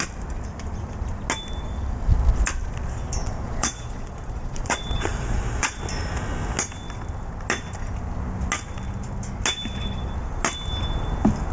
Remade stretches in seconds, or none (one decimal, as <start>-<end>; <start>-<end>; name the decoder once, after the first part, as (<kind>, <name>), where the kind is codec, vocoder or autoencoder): 3.2-5.8 (vocoder, Vocos)